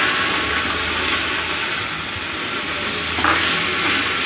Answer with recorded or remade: recorded